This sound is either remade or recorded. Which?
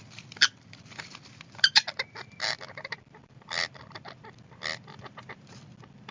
remade